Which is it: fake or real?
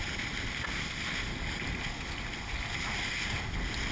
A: real